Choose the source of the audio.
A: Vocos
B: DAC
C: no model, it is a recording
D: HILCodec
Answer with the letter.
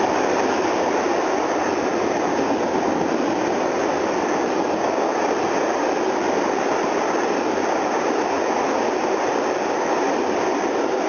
C